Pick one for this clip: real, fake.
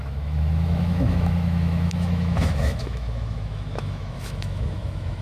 fake